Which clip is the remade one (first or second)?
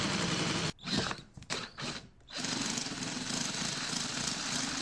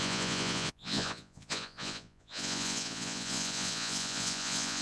second